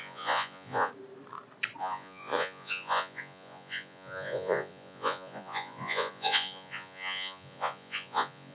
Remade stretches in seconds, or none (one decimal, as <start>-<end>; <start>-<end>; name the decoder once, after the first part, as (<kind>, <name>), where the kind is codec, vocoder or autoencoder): 0.0-0.9 (vocoder, Vocos); 1.8-8.5